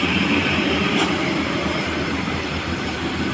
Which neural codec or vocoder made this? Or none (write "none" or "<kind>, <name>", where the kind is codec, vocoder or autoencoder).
vocoder, BigVGAN v2